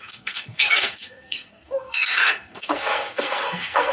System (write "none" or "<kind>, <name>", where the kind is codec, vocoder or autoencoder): codec, SNAC